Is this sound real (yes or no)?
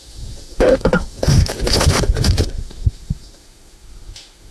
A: no